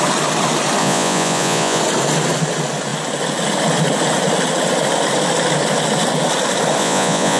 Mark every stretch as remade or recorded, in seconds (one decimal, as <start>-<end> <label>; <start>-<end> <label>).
0.0-0.8 recorded; 0.8-1.8 remade; 1.8-6.8 recorded; 6.8-7.4 remade